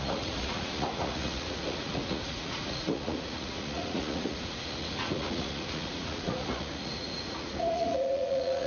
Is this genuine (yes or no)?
no